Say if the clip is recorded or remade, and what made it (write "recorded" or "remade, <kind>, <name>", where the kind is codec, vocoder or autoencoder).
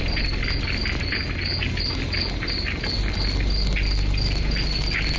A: recorded